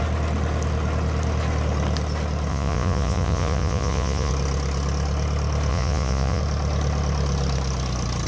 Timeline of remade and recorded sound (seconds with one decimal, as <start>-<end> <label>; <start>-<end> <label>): 0.0-2.5 recorded; 2.5-4.3 remade; 4.3-5.7 recorded; 5.7-6.4 remade; 6.4-8.3 recorded